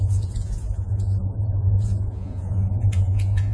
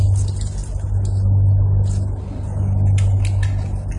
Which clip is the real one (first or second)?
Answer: second